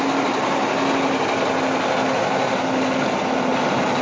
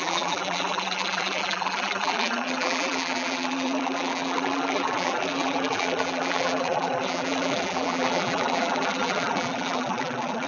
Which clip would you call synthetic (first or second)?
second